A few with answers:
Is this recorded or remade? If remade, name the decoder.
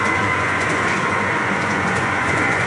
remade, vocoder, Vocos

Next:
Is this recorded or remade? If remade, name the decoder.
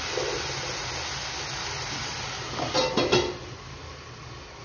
recorded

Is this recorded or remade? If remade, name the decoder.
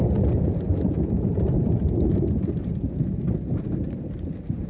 recorded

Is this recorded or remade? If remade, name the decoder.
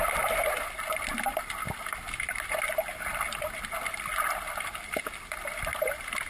recorded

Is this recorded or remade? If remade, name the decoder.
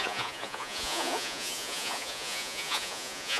remade, vocoder, Vocos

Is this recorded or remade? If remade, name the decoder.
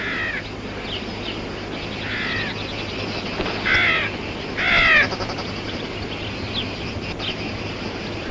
recorded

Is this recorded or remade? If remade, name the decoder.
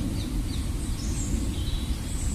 remade, vocoder, BigVGAN v2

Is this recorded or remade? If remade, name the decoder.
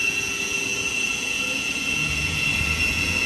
remade, vocoder, Vocos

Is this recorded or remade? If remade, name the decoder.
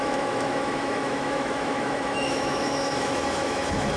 remade, autoencoder, DAC-VAE